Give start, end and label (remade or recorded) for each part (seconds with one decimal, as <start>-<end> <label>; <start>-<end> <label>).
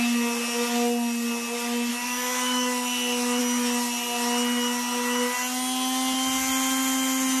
0.0-1.9 recorded; 1.9-3.4 remade; 3.4-7.4 recorded